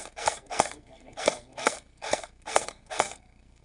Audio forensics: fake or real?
fake